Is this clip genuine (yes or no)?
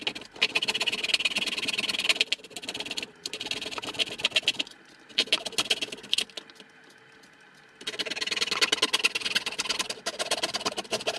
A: yes